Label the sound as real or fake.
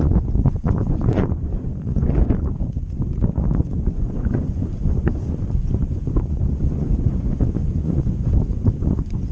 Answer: fake